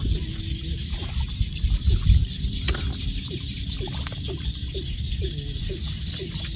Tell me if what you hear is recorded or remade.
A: recorded